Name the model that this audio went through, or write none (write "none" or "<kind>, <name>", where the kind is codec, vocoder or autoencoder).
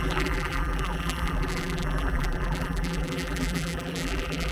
vocoder, BigVGAN v2